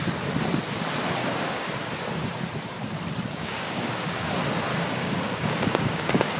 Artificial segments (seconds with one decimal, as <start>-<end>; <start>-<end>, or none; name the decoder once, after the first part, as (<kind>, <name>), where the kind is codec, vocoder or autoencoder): 1.2-1.7 (codec, DAC); 3.4-4.3; 4.7-6.4